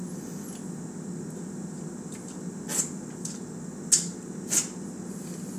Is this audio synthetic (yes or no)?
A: no